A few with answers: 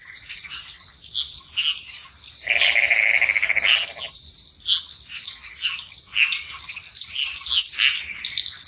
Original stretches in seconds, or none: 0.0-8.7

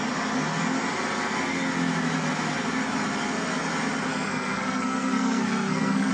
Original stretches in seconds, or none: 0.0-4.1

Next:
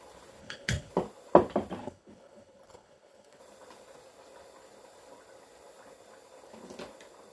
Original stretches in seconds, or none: 0.0-0.4; 0.9-1.8; 3.4-7.3

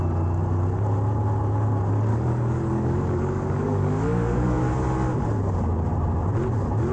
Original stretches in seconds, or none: 0.0-2.1; 4.7-6.9

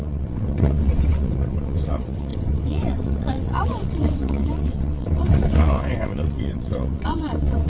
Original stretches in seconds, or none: none

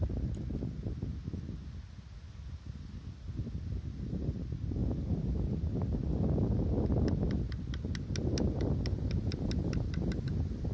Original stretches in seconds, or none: 0.0-10.7